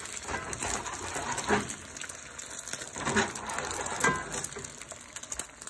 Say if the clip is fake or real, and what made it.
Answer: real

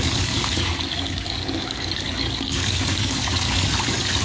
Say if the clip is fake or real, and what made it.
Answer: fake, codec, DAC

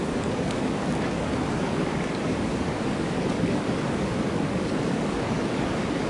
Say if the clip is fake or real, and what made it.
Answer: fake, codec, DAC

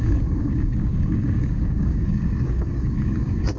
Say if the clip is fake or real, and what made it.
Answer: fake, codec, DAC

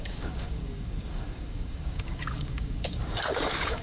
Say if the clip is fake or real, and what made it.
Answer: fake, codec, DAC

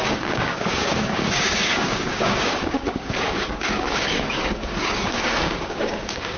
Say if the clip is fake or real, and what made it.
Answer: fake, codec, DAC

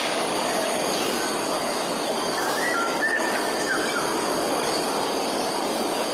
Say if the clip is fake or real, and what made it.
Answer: fake, codec, DAC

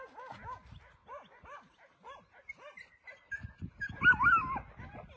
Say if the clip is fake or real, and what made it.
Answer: real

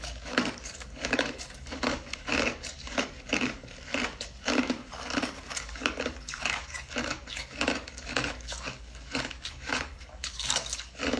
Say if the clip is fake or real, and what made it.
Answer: fake, codec, DAC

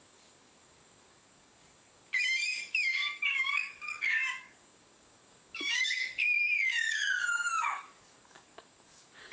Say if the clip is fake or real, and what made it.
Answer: fake, codec, DAC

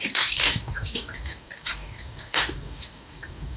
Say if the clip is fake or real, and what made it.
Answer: fake, codec, DAC